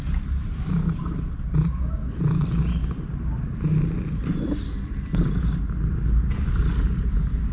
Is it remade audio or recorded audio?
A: recorded